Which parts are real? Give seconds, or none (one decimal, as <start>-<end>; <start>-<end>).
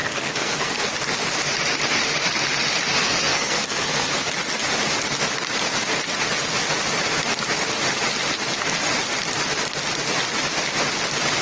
0.9-3.0; 4.1-11.4